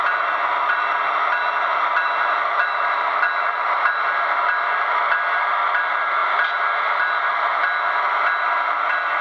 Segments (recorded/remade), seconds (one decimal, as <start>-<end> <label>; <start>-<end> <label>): 0.0-6.2 remade; 6.2-7.0 recorded; 7.0-7.5 remade; 7.5-9.2 recorded